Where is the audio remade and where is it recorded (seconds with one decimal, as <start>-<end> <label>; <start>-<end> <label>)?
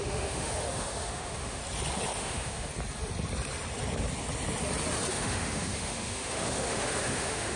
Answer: 0.0-1.6 remade; 1.6-2.2 recorded; 2.2-2.7 remade; 2.7-5.1 recorded; 5.1-7.6 remade